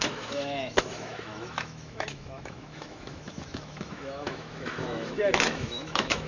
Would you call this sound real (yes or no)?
no